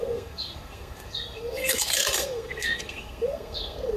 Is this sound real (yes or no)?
no